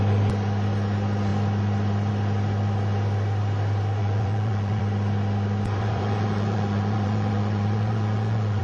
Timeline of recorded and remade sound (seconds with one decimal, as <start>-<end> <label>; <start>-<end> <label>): 0.0-4.0 recorded; 4.0-4.8 remade; 4.8-5.8 recorded; 5.8-8.6 remade